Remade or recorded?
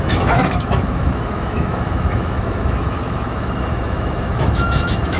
remade